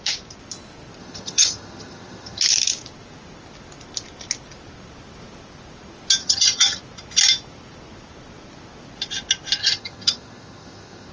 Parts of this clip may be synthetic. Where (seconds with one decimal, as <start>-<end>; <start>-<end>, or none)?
1.0-2.4; 6.2-6.8; 9.6-11.1